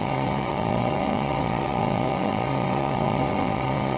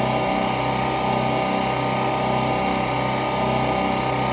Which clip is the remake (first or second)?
first